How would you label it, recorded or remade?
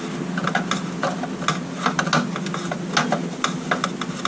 recorded